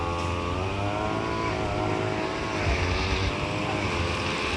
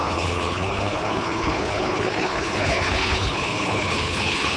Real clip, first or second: first